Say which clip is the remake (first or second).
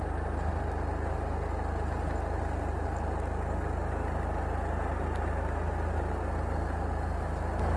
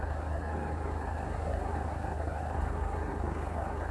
second